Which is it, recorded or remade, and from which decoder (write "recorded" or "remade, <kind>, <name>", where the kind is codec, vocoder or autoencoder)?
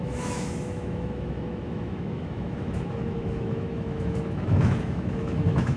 remade, autoencoder, DAC-VAE